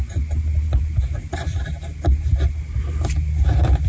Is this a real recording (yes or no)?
yes